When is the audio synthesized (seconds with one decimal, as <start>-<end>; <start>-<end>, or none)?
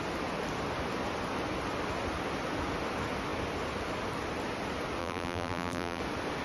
5.0-6.0